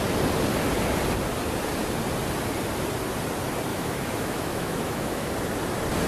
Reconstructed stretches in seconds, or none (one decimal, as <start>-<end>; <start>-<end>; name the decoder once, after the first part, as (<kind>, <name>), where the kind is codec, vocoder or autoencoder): 3.7-5.3 (autoencoder, DAC-VAE)